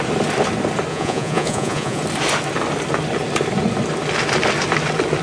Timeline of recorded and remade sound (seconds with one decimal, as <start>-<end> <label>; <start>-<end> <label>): 0.0-0.9 recorded; 0.9-2.0 remade; 2.0-5.2 recorded